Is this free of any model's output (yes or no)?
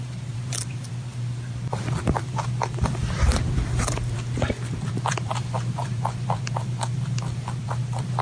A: no